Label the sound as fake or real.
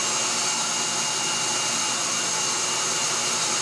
real